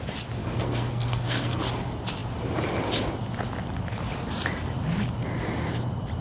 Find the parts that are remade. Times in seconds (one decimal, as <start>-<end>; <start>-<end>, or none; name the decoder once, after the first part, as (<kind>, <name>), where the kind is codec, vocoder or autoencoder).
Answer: 0.4-1.6 (codec, SNAC)